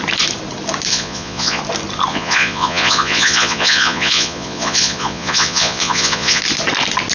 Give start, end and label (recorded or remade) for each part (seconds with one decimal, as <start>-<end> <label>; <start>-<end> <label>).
0.0-0.9 recorded; 0.9-1.6 remade; 1.6-2.1 recorded; 2.1-6.4 remade; 6.4-7.1 recorded